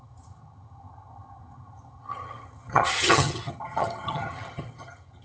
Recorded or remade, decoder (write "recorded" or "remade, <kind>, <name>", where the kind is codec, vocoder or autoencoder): remade, vocoder, HiFi-GAN